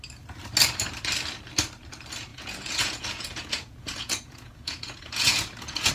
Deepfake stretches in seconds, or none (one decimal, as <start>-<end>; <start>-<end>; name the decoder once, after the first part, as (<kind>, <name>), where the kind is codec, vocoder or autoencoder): 2.3-5.9 (vocoder, Vocos)